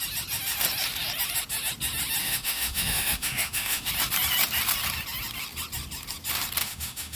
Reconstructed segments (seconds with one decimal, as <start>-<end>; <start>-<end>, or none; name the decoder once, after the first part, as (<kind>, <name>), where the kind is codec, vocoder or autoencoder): 2.2-3.9 (autoencoder, DAC-VAE); 6.6-7.2